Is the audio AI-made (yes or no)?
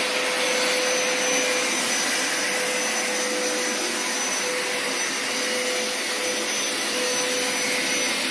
no